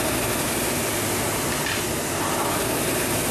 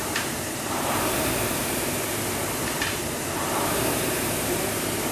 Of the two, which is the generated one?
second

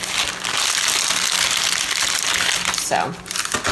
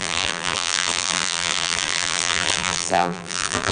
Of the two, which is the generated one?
second